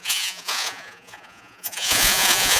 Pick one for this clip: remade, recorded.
remade